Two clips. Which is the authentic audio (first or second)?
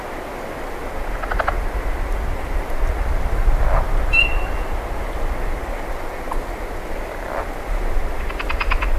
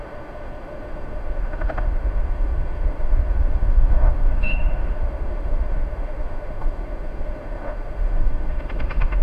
first